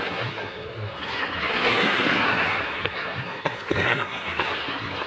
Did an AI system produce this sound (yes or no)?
yes